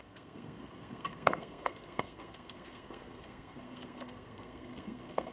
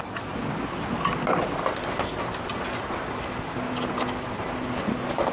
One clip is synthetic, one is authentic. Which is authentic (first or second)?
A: second